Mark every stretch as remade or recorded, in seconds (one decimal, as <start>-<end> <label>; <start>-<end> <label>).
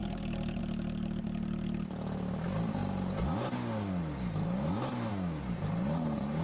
0.0-0.6 remade; 0.6-6.4 recorded